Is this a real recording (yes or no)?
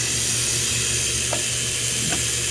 yes